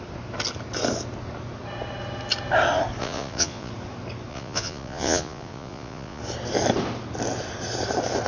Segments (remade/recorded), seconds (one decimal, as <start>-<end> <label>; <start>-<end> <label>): 0.0-3.0 recorded; 3.0-3.7 remade; 3.7-4.3 recorded; 4.3-6.2 remade; 6.2-8.3 recorded